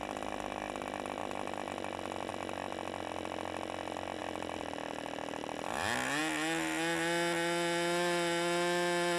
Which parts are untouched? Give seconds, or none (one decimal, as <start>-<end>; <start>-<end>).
0.0-9.2

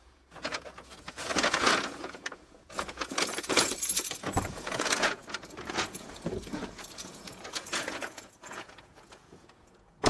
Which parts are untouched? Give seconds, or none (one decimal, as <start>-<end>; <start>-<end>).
none